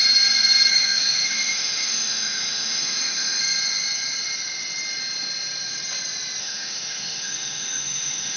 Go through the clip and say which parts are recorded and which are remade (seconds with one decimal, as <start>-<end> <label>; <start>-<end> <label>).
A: 0.0-0.7 recorded; 0.7-3.4 remade; 3.4-6.4 recorded; 6.4-8.4 remade